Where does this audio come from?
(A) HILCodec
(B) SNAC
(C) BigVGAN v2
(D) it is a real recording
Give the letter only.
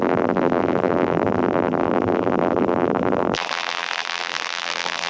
C